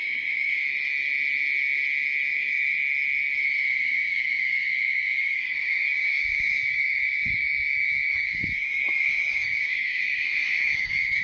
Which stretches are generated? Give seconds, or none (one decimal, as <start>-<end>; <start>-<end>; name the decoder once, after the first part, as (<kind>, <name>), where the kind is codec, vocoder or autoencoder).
0.0-0.6 (codec, DAC); 2.3-2.8; 3.8-11.2